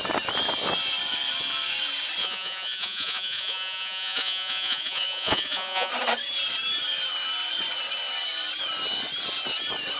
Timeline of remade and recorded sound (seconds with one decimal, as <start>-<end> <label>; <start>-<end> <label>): 0.0-2.2 recorded; 2.2-5.9 remade; 5.9-10.0 recorded